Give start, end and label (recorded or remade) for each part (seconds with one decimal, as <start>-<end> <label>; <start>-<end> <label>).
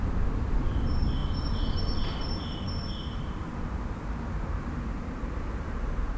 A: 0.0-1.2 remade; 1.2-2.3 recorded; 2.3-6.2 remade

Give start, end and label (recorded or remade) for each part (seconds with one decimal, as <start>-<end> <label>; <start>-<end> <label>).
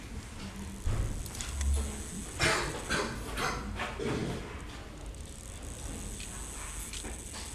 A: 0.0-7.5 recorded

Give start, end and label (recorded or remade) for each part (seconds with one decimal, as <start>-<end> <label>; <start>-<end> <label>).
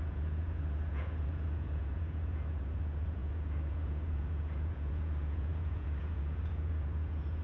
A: 0.0-7.4 remade